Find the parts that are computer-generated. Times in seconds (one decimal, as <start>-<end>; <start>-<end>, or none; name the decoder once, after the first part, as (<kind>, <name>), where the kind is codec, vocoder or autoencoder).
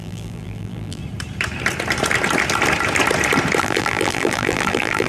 0.0-1.0 (vocoder, BigVGAN v2); 3.6-5.1